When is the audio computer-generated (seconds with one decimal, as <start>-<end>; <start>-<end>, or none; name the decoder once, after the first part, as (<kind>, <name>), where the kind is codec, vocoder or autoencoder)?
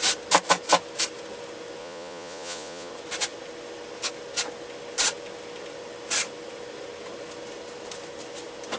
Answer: 1.8-2.9 (vocoder, Vocos)